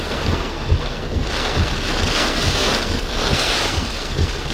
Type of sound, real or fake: fake